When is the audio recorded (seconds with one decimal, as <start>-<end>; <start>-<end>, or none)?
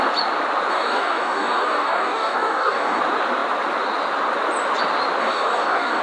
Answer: 0.0-0.7; 3.0-5.2